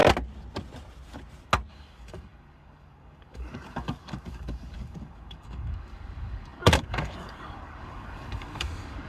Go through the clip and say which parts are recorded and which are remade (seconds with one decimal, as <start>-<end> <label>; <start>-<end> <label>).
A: 0.0-1.7 recorded; 1.7-9.1 remade